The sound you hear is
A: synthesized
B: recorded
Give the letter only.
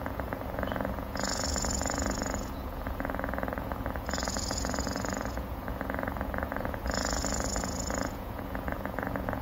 A